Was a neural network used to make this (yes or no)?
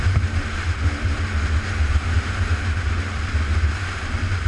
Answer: no